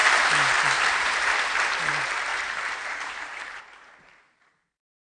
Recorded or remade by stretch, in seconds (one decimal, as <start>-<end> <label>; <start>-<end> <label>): 0.0-5.1 remade